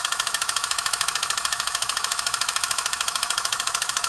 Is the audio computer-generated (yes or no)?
yes